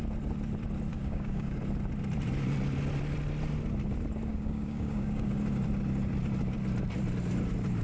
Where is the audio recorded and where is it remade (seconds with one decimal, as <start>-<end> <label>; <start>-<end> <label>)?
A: 0.0-0.9 recorded; 0.9-1.6 remade; 1.6-4.3 recorded; 4.3-5.4 remade; 5.4-7.8 recorded